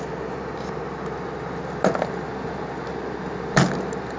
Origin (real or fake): real